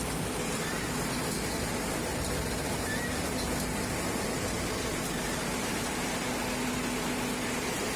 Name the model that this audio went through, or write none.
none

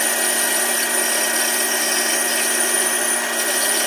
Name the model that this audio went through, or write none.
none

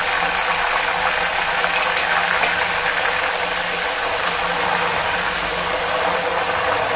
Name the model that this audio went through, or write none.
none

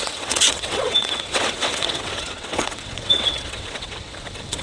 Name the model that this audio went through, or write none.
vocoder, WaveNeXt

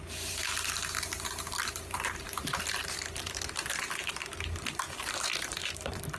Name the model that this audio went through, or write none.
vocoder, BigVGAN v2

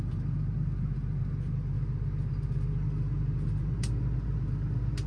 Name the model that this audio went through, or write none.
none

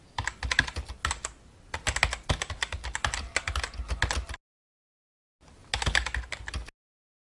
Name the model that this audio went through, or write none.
none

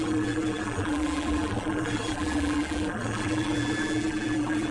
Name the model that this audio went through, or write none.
vocoder, BigVGAN v2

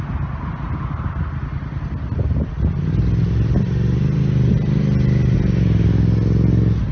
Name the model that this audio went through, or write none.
none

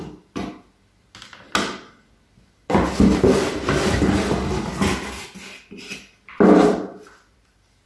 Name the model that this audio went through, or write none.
none